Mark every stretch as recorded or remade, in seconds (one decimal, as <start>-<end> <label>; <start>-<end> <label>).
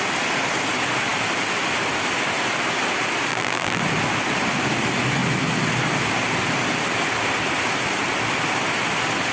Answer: 0.0-3.3 recorded; 3.3-3.8 remade; 3.8-9.3 recorded